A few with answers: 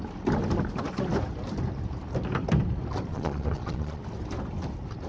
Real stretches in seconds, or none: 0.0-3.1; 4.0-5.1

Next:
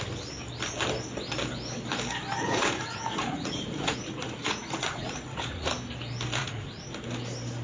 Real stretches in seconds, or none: 0.0-2.4; 5.7-6.4; 6.9-7.6

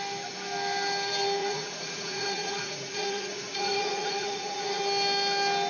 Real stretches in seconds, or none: 0.0-1.4; 4.8-5.7